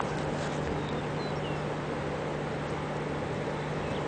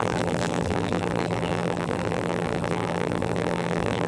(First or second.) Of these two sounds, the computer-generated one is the second